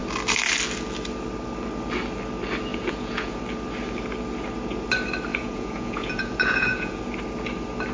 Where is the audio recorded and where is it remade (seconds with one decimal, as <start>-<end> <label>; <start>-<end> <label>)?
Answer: 0.0-2.7 recorded; 2.7-3.4 remade; 3.4-5.3 recorded; 5.3-7.0 remade; 7.0-7.9 recorded